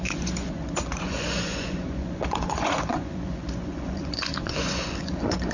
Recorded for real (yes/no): no